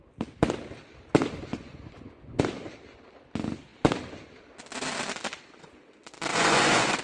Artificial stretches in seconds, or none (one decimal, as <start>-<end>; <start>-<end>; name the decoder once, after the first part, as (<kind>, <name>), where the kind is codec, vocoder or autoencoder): 1.5-2.4 (vocoder, Vocos); 6.3-7.0